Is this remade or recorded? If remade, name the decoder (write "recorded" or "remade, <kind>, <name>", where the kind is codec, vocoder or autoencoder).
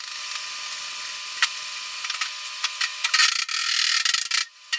recorded